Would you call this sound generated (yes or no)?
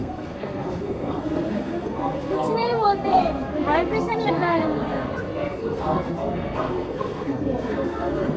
yes